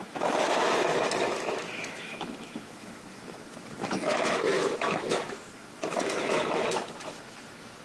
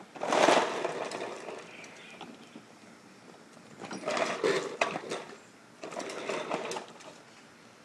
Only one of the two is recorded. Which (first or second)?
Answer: second